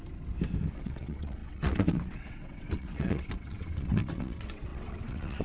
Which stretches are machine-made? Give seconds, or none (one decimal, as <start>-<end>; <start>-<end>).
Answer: 0.7-5.4